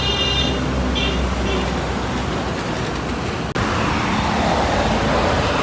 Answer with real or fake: real